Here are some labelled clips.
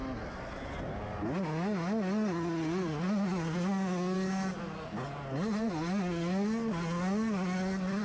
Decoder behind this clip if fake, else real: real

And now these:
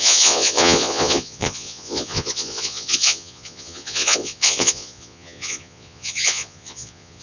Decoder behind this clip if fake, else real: fake, vocoder, Vocos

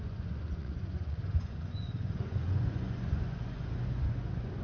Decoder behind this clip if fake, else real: fake, vocoder, Vocos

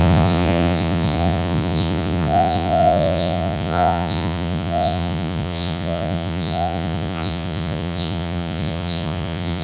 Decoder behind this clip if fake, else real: fake, vocoder, Vocos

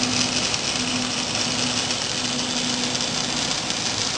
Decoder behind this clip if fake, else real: real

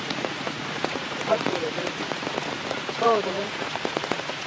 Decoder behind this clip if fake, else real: fake, vocoder, Vocos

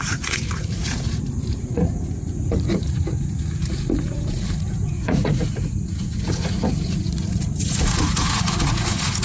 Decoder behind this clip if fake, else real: fake, vocoder, Vocos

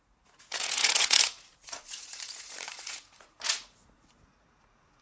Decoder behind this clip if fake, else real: fake, vocoder, Vocos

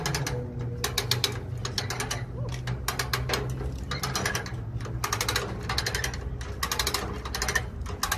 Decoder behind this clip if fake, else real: real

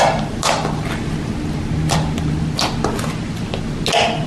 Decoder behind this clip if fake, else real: real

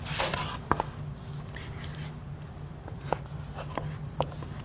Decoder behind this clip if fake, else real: real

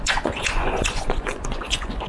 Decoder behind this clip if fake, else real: fake, vocoder, Vocos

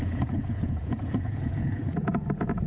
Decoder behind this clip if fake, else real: fake, vocoder, Vocos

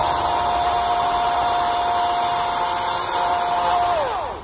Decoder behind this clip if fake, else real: real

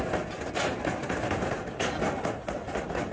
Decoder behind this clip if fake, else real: real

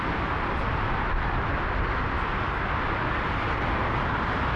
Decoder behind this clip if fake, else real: real